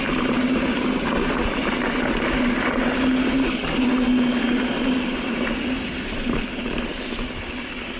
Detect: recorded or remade recorded